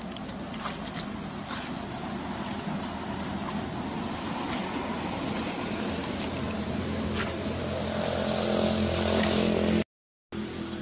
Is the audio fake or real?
real